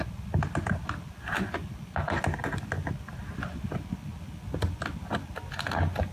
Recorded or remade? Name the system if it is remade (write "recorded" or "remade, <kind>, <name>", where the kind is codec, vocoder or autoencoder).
recorded